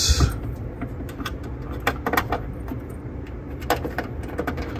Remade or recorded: recorded